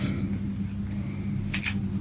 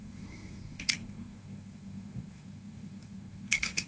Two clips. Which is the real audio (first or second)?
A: first